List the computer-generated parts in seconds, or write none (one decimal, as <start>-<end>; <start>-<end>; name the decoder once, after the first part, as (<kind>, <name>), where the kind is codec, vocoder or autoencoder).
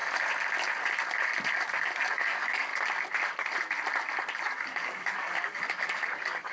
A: 2.0-2.7 (codec, DAC); 4.4-6.5